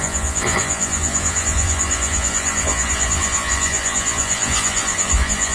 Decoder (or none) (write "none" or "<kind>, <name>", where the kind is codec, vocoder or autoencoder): vocoder, Vocos